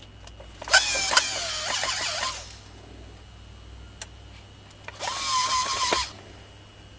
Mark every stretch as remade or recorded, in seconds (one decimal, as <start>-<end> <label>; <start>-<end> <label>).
0.0-7.0 recorded